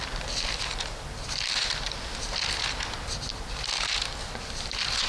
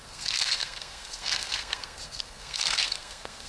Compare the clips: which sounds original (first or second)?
first